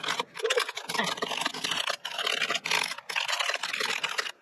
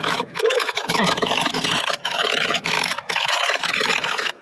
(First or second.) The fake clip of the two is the second